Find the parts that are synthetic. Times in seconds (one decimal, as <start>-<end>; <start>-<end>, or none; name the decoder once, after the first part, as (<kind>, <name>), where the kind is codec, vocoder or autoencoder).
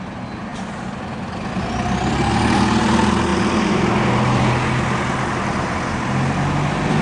3.3-4.5 (vocoder, BigVGAN v2)